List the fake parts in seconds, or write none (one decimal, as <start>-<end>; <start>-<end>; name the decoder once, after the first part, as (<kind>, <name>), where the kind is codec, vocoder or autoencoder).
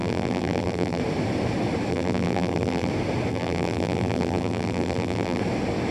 0.0-1.0 (vocoder, BigVGAN v2); 1.9-2.9; 3.3-5.4